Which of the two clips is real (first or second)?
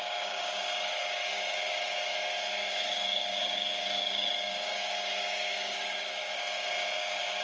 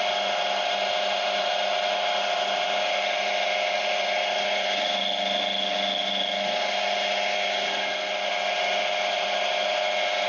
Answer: second